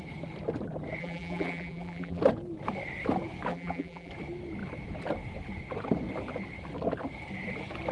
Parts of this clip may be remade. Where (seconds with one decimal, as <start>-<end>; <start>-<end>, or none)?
1.0-2.2; 3.5-4.1